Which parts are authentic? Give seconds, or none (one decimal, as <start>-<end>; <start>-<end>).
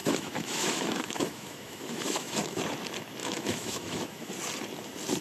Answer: 2.6-3.2; 4.3-5.2